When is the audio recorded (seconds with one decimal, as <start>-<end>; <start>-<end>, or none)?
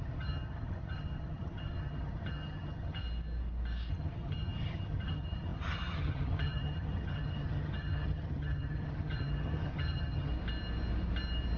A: 3.0-3.9; 10.3-11.6